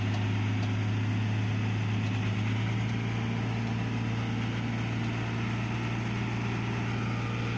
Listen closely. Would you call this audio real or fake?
real